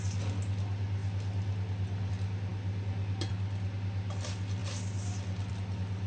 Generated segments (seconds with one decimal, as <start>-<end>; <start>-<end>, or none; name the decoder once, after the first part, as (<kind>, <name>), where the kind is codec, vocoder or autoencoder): none

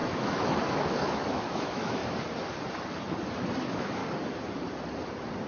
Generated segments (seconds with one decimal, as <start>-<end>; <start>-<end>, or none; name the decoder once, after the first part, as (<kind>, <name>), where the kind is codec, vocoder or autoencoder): 0.0-2.0 (autoencoder, DAC-VAE); 3.6-4.0

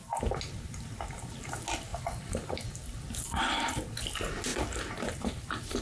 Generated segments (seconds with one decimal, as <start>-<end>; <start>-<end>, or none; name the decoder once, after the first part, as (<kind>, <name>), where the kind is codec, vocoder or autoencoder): none

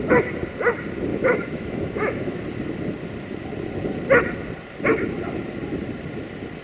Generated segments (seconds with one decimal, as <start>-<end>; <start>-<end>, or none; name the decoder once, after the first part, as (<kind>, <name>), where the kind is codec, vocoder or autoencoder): 1.1-2.4 (autoencoder, DAC-VAE)

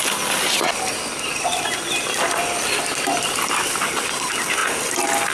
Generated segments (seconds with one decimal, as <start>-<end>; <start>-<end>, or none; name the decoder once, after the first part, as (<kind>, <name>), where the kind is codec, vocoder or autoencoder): none

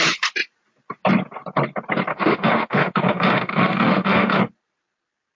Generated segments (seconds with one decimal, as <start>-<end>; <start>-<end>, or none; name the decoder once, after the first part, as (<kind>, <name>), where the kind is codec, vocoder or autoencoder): 2.1-4.4 (autoencoder, DAC-VAE)